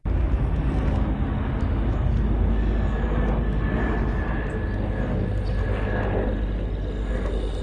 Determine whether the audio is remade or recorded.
recorded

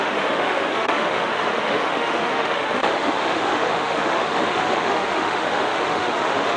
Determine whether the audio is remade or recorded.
remade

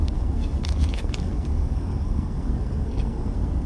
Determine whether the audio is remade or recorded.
remade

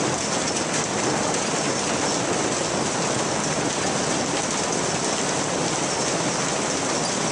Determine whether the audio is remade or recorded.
recorded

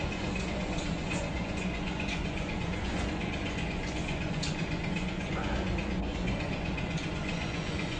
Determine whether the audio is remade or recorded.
remade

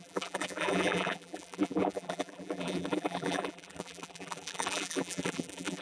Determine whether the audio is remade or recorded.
remade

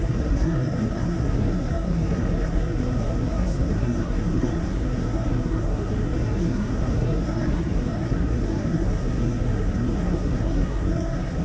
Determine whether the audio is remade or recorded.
remade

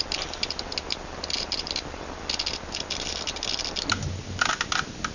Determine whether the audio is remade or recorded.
recorded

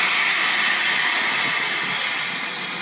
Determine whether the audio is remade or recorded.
recorded